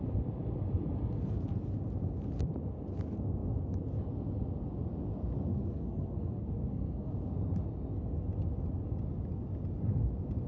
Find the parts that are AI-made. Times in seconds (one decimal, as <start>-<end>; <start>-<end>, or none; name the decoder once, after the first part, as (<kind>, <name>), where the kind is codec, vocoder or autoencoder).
5.5-7.1 (codec, SNAC)